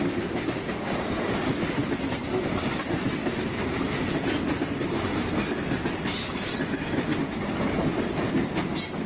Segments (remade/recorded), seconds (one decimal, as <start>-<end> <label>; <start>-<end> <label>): 0.0-1.8 remade; 1.8-6.5 recorded; 6.5-7.1 remade; 7.1-8.7 recorded; 8.7-9.1 remade